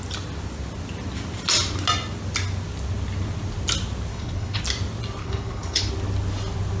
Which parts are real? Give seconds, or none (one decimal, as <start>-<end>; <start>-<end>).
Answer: 0.0-4.1; 4.6-5.2; 5.9-6.8